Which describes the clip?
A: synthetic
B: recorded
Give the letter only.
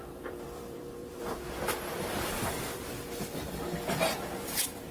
A